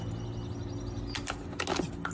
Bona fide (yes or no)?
yes